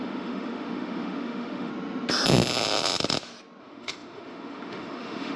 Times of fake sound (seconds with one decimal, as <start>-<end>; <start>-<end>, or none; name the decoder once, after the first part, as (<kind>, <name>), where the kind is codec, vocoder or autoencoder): 0.0-1.7 (autoencoder, DAC-VAE); 3.6-5.4